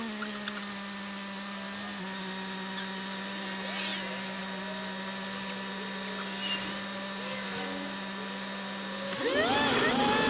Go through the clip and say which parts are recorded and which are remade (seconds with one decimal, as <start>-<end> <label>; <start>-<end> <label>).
0.0-10.3 recorded